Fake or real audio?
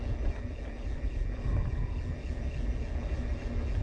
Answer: real